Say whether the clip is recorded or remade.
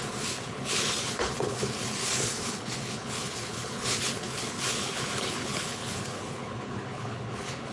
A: remade